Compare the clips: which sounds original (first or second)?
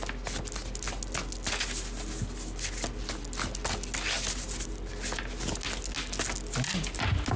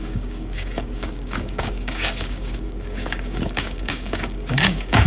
first